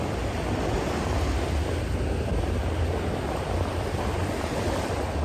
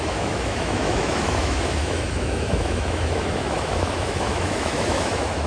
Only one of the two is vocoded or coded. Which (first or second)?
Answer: second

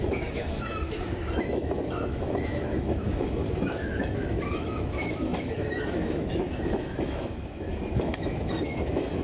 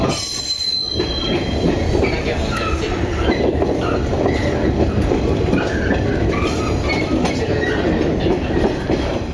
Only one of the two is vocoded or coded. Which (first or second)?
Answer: first